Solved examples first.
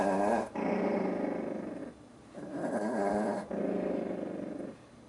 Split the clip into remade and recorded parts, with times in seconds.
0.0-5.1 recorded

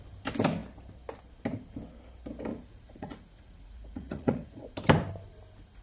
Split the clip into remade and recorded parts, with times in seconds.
0.0-2.5 recorded; 2.5-4.6 remade; 4.6-5.8 recorded

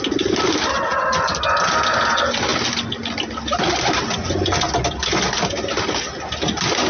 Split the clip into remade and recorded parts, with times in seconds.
0.0-6.9 recorded

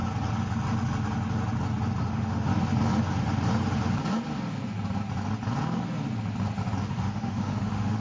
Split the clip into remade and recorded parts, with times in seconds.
0.0-2.0 recorded; 2.0-2.5 remade; 2.5-6.8 recorded; 6.8-8.0 remade

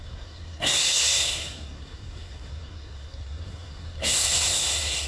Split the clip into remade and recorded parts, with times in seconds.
0.0-5.1 remade

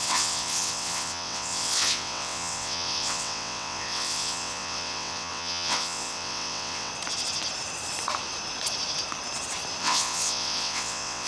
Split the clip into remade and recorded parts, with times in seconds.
0.0-6.9 remade; 6.9-9.8 recorded; 9.8-11.3 remade